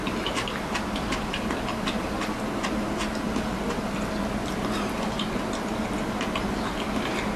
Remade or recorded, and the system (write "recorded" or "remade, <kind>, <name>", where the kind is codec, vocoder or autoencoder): recorded